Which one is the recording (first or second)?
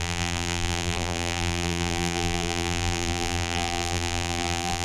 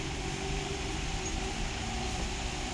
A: second